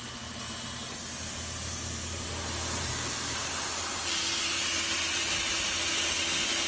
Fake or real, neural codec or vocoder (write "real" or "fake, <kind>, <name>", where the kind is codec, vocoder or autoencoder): real